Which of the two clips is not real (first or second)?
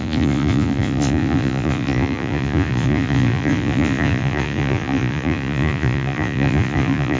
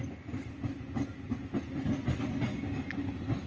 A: first